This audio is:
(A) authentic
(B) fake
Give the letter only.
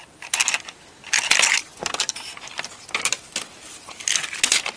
A